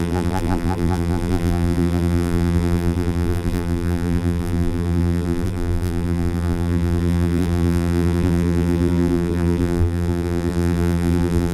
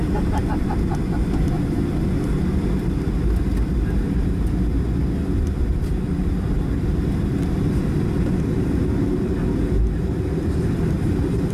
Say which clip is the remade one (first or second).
first